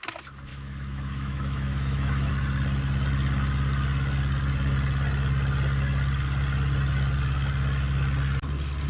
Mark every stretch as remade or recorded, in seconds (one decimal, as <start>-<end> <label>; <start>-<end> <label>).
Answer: 0.0-0.5 recorded; 0.5-2.3 remade; 2.3-8.9 recorded